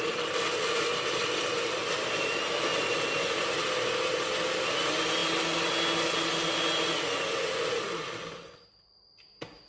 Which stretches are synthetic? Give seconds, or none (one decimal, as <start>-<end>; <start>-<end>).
none